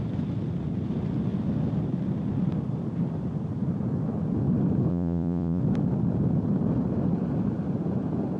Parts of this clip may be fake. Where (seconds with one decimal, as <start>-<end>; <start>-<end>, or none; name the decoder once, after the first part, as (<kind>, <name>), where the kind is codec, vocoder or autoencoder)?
4.9-5.6 (vocoder, Vocos)